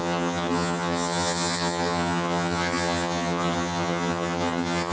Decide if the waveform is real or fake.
fake